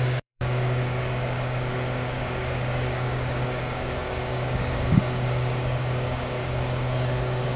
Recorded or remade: remade